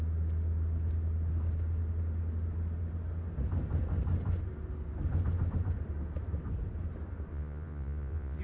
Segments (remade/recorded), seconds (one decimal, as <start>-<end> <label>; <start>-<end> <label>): 0.0-7.3 recorded; 7.3-8.4 remade